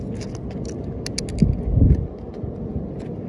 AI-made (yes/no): no